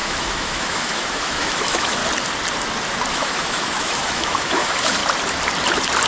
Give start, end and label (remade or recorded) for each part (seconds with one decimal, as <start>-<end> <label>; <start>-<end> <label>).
0.0-2.0 remade; 2.0-3.1 recorded; 3.1-5.0 remade; 5.0-6.1 recorded